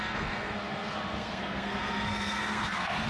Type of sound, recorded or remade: remade